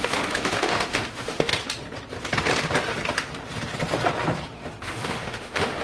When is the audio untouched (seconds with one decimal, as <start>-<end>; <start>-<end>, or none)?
1.5-4.8